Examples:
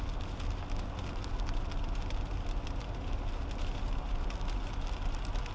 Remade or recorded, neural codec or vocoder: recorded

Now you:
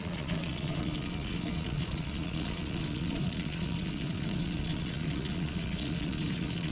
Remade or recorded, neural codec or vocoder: remade, vocoder, Vocos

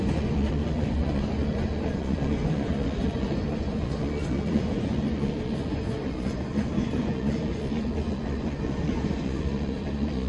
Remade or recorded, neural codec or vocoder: remade, vocoder, Vocos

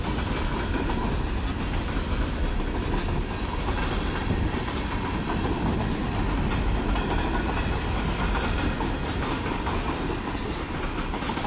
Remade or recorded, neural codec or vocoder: recorded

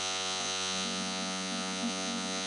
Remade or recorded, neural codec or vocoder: remade, vocoder, Vocos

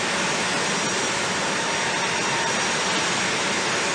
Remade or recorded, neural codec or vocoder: recorded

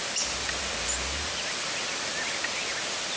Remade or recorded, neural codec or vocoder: recorded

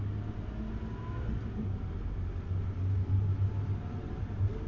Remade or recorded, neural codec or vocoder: recorded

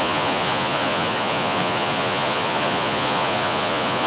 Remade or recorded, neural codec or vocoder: remade, vocoder, Vocos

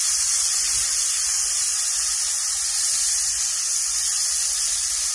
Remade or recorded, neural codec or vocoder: recorded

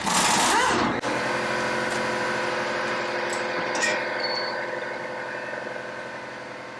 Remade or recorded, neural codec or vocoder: recorded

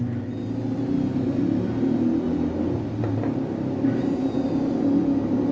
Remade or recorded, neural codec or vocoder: recorded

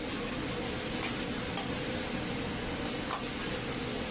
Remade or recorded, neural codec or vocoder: recorded